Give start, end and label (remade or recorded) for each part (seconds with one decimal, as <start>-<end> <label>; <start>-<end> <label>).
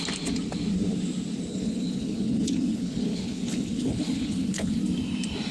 0.0-1.5 recorded; 1.5-4.8 remade; 4.8-5.5 recorded